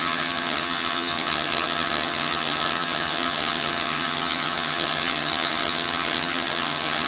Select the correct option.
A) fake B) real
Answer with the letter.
A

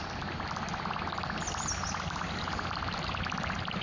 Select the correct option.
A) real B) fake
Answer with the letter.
A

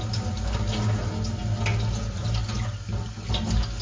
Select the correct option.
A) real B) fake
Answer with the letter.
A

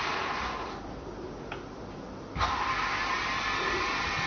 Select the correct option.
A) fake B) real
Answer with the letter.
B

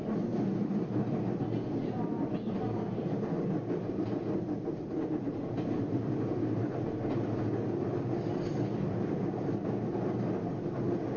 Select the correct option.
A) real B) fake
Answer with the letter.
A